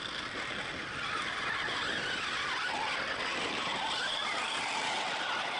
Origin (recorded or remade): recorded